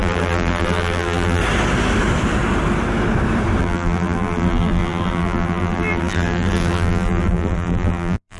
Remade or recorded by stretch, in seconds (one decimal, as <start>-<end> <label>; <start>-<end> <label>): 0.0-1.4 remade; 1.4-3.6 recorded; 3.6-8.4 remade